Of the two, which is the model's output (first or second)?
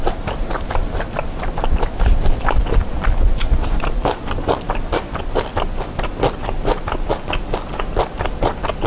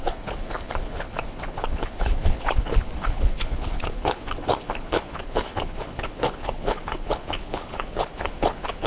second